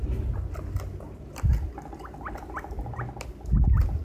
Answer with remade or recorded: recorded